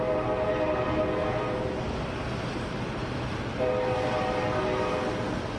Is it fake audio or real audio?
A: real